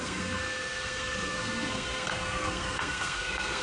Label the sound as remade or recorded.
remade